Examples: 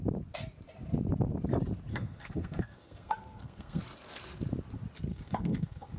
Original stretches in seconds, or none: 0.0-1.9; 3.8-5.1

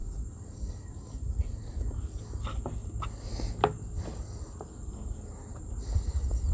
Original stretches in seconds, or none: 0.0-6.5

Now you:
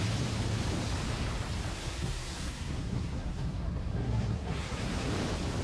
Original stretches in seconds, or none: 0.0-1.7; 5.1-5.6

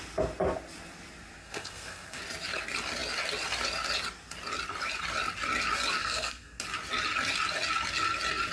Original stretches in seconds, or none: 0.0-1.4; 2.2-6.0; 6.6-8.5

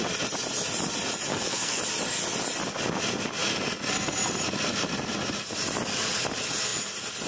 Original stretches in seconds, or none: 0.0-1.3; 1.8-7.3

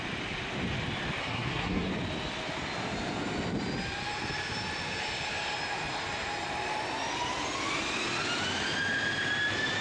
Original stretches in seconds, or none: 0.0-1.2; 1.9-9.8

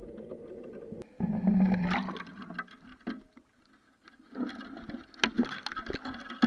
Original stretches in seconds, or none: 0.0-6.5

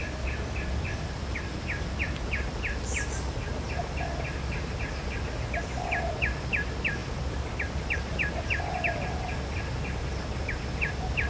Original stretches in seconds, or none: 0.0-11.3